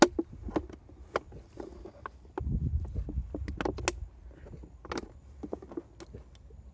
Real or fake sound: real